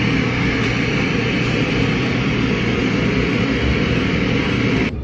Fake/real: fake